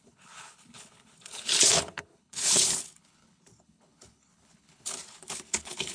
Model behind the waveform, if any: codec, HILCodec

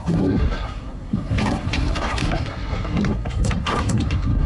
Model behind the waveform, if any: codec, SNAC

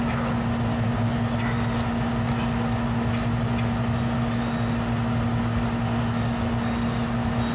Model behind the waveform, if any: none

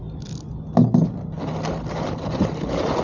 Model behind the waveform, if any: none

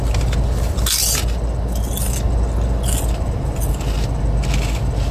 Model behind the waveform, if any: none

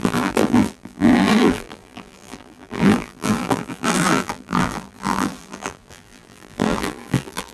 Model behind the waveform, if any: vocoder, BigVGAN v2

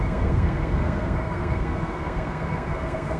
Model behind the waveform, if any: codec, SNAC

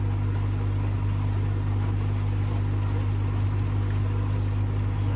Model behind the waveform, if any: none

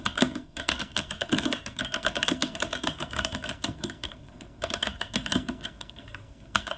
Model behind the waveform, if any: codec, SNAC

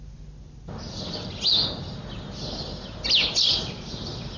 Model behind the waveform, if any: none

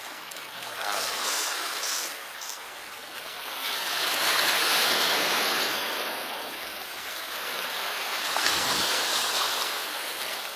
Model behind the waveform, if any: codec, SNAC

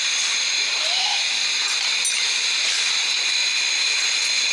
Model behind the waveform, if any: none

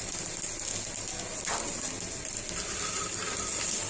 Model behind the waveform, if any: none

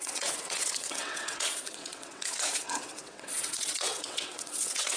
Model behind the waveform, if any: vocoder, WaveNeXt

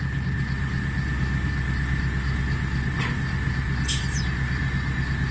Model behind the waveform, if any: none